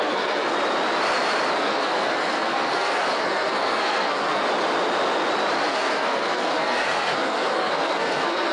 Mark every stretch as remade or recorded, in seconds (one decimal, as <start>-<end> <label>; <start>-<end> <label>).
0.0-0.5 remade; 0.5-1.6 recorded; 1.6-4.4 remade; 4.4-5.7 recorded; 5.7-8.5 remade